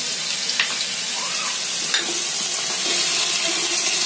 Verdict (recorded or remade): recorded